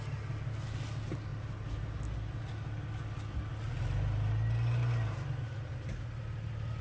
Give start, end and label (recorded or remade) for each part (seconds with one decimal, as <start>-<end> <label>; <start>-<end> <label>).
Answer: 0.0-6.8 recorded